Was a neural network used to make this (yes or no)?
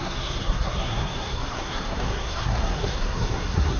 yes